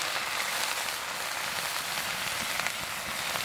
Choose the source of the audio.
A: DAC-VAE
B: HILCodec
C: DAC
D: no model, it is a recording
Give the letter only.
D